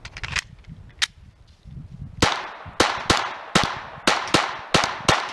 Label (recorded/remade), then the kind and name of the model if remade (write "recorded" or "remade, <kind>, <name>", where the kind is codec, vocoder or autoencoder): recorded